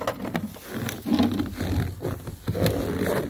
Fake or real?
real